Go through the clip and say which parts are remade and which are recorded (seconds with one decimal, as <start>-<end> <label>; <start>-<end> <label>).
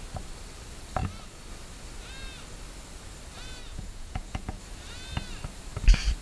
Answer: 0.0-3.6 recorded; 3.6-4.6 remade; 4.6-6.2 recorded